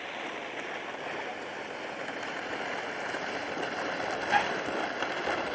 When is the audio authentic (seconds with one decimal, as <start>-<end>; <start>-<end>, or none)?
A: none